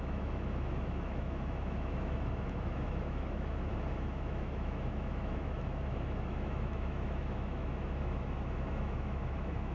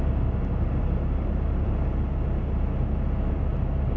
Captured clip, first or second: second